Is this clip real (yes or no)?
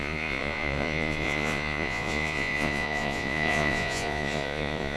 no